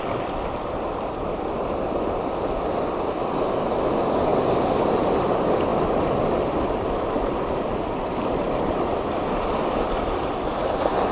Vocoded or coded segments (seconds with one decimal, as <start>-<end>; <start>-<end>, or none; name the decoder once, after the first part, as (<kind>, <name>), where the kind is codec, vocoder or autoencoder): none